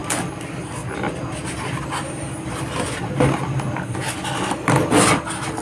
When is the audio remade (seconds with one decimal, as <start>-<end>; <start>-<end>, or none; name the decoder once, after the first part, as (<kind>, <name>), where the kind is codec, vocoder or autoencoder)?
none